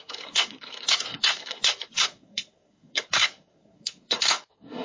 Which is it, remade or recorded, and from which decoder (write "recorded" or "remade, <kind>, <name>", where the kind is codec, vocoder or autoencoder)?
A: remade, codec, SNAC